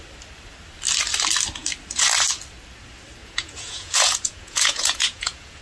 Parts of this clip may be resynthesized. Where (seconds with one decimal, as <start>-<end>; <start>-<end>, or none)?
3.2-5.6